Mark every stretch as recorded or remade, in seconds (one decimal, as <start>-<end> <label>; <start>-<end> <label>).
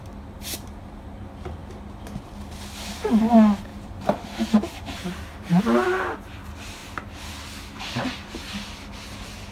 0.0-3.7 recorded; 3.7-5.6 remade; 5.6-9.5 recorded